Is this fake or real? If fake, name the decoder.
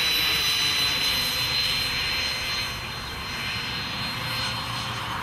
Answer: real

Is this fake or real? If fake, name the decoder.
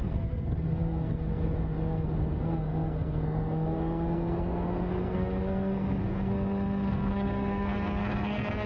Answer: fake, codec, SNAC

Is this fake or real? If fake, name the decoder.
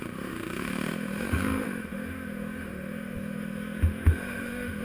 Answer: fake, autoencoder, DAC-VAE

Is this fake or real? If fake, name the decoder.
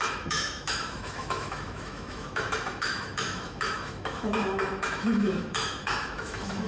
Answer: fake, autoencoder, DAC-VAE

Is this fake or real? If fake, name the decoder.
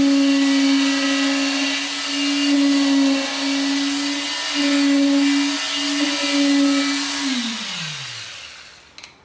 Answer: real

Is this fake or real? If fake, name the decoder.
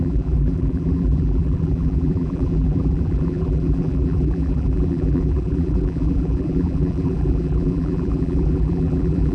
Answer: fake, vocoder, BigVGAN v2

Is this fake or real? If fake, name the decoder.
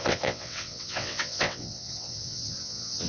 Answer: fake, vocoder, WaveNeXt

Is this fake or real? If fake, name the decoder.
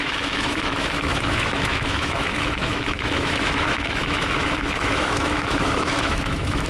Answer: fake, autoencoder, DAC-VAE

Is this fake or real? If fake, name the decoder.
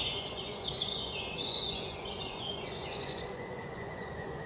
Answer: fake, vocoder, Vocos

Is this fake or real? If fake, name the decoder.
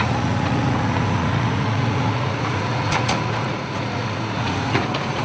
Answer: fake, vocoder, Vocos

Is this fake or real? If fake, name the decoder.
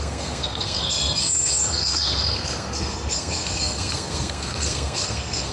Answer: fake, codec, SNAC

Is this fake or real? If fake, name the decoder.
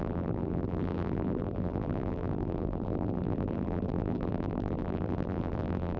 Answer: fake, vocoder, BigVGAN v2